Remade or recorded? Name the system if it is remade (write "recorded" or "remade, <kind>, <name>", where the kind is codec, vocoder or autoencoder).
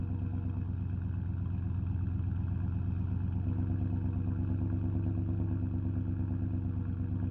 recorded